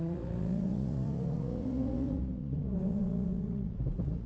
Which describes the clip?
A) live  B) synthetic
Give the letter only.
B